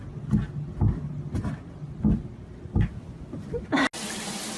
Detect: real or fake real